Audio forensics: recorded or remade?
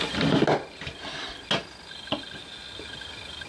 recorded